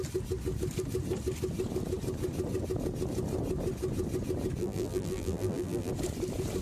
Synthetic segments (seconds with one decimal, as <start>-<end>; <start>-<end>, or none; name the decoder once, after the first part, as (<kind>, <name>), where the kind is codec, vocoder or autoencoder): 4.6-5.9 (vocoder, BigVGAN v2)